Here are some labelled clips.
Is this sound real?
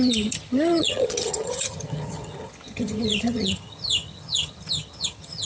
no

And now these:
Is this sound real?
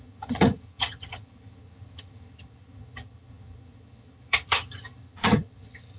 no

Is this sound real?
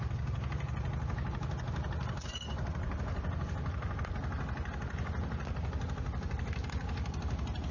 yes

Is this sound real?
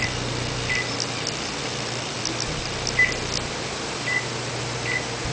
yes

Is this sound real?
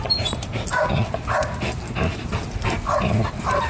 yes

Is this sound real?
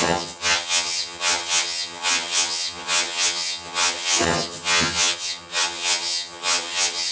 no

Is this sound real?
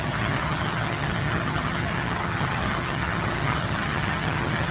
no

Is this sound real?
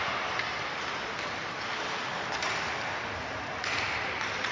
yes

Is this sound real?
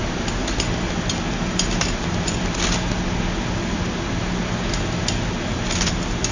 yes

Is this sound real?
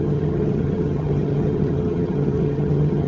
no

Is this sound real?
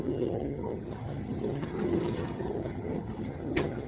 no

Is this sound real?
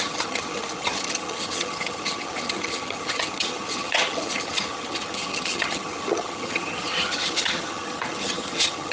no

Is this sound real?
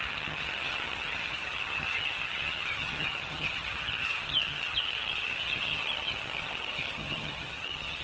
no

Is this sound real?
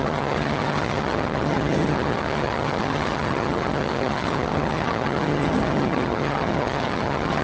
no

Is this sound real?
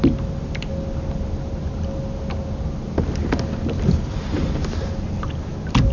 yes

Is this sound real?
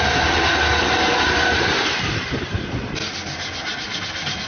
yes